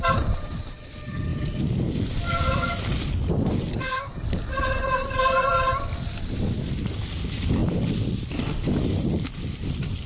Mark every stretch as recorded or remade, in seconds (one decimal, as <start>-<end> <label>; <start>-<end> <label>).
0.0-10.1 recorded